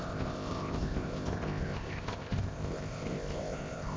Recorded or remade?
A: remade